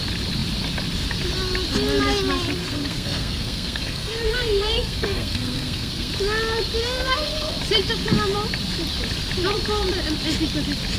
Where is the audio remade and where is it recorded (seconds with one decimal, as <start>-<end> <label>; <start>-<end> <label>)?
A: 0.0-2.6 recorded; 2.6-6.1 remade; 6.1-6.8 recorded; 6.8-7.6 remade; 7.6-11.0 recorded